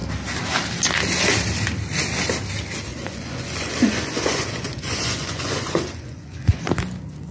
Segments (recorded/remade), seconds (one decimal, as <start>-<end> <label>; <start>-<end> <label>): 0.0-2.9 recorded; 2.9-6.7 remade; 6.7-7.3 recorded